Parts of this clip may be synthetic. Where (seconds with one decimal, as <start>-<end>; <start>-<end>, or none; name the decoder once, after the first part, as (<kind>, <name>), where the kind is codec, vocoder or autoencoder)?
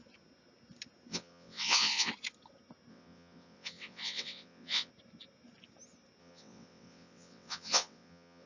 1.1-2.1 (vocoder, WaveNeXt); 2.9-4.9; 6.2-8.5